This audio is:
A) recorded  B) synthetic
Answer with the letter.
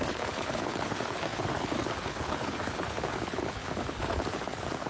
B